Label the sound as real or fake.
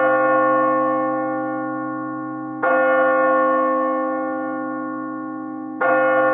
real